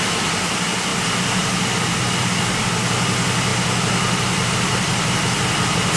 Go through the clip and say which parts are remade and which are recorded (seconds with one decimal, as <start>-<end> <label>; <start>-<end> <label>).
0.0-6.0 recorded

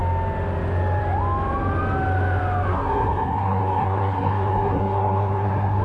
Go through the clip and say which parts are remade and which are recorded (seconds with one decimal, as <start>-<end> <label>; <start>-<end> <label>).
0.0-2.7 recorded; 2.7-5.8 remade